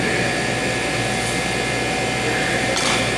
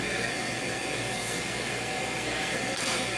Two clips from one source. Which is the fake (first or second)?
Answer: second